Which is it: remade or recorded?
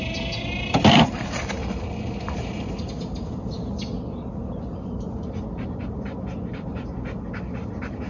recorded